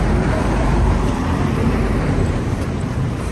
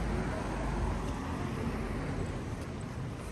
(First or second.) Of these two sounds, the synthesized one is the first